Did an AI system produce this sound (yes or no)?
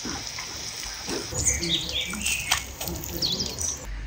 no